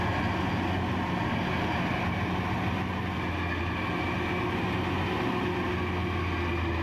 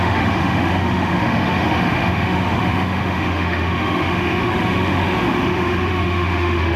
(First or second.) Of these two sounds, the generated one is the second